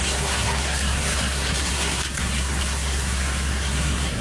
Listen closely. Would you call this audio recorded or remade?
remade